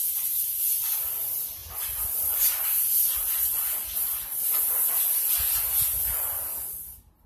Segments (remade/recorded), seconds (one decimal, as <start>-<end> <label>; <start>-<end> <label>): 0.0-7.3 recorded